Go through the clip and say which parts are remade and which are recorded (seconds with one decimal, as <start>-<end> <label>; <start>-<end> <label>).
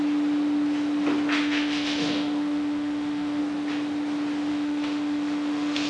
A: 0.0-1.4 recorded; 1.4-3.4 remade; 3.4-4.5 recorded; 4.5-5.9 remade